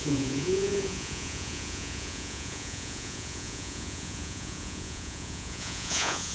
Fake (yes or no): yes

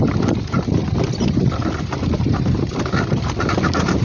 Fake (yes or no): yes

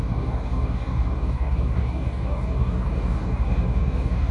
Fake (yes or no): yes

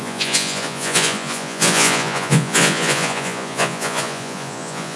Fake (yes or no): yes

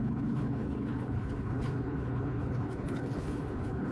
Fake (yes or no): yes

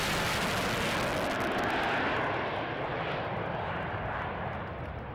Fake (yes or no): no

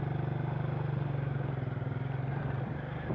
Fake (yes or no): no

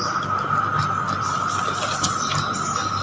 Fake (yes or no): no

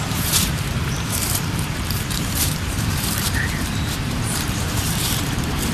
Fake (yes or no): yes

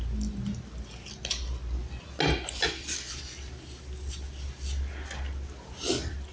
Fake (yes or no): no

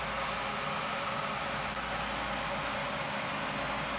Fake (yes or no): no